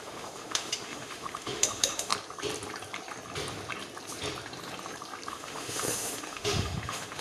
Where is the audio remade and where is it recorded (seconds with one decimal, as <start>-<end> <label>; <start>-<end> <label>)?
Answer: 0.0-2.1 remade; 2.1-5.3 recorded; 5.3-7.2 remade